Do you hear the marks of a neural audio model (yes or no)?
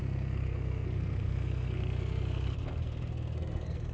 yes